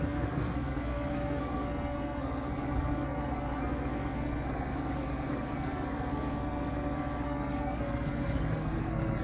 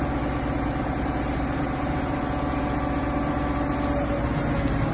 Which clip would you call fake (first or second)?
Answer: first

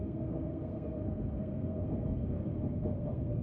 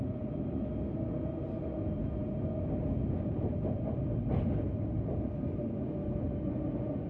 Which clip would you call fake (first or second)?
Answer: first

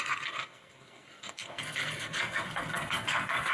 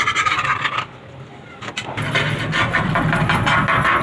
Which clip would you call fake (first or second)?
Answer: first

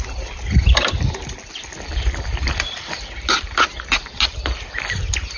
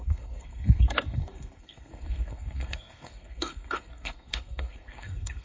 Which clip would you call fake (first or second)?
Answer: second